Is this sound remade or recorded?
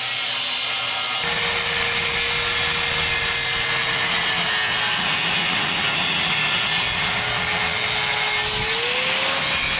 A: recorded